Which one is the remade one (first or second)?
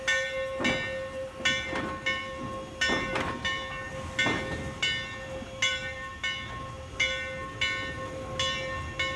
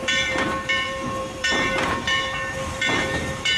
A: second